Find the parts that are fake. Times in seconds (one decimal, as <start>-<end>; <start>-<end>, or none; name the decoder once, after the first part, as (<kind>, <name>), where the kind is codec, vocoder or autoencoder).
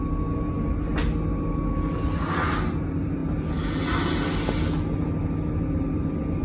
none